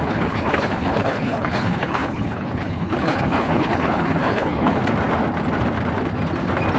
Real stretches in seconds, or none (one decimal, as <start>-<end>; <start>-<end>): 4.8-6.8